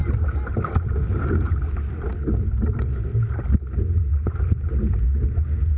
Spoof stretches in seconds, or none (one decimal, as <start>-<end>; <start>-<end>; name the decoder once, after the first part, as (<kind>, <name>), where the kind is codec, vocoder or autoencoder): none